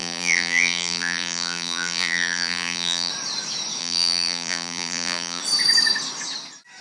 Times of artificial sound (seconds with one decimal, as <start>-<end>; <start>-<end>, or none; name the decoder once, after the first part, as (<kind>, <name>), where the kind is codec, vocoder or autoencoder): 0.0-3.1 (vocoder, BigVGAN v2); 3.8-5.4